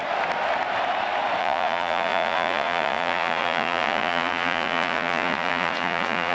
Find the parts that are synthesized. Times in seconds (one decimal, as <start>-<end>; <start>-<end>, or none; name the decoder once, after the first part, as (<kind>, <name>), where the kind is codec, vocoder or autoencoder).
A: 1.4-6.3 (vocoder, Vocos)